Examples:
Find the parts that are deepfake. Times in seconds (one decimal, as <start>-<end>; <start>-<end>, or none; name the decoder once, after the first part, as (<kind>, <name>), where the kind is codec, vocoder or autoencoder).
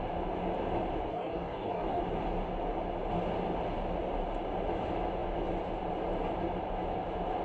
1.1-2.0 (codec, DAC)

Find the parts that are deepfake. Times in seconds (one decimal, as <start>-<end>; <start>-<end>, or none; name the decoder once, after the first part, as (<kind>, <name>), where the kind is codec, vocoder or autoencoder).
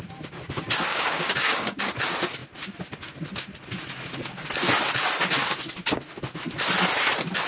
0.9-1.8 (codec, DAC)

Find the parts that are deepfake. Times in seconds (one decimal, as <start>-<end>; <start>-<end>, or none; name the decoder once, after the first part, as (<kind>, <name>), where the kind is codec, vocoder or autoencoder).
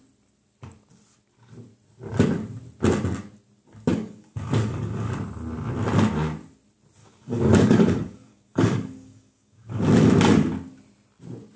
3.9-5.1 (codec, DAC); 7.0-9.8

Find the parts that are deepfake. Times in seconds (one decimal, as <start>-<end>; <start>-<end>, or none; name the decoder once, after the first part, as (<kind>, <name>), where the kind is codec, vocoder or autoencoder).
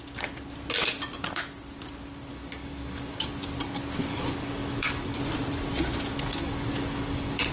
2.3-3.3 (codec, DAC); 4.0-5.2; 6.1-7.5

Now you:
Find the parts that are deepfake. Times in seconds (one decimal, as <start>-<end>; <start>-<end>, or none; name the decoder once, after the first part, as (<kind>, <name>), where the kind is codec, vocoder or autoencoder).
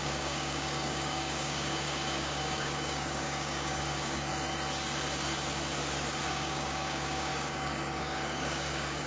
0.0-4.3 (codec, DAC); 6.2-9.1